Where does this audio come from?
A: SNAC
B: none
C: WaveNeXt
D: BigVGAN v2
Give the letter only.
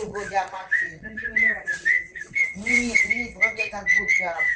C